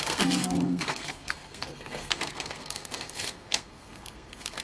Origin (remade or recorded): remade